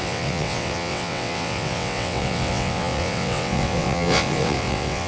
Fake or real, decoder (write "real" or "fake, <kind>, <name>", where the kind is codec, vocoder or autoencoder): fake, vocoder, WaveNeXt